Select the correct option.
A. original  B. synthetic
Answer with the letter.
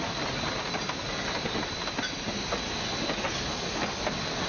A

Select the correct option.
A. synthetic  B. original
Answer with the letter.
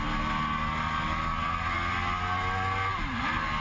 B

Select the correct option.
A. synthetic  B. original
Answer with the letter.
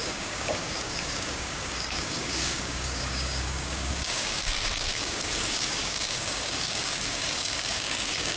A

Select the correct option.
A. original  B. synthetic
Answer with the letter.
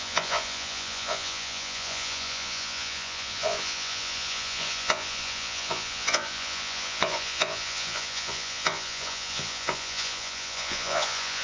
B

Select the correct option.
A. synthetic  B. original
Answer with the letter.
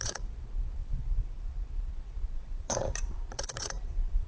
A